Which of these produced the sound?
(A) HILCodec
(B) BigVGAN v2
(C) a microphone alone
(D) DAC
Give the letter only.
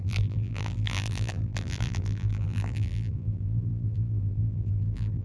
B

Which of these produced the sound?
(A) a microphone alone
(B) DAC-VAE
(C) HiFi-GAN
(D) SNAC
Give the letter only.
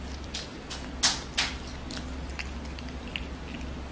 A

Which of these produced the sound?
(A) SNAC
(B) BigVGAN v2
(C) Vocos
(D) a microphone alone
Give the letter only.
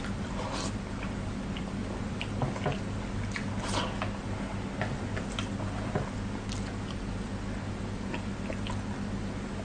D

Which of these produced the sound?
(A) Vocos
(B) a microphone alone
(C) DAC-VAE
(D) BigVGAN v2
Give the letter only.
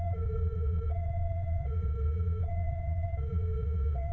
A